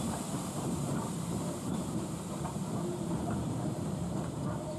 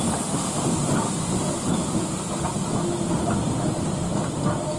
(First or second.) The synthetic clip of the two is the first